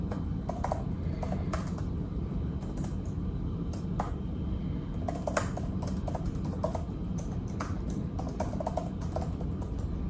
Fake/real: real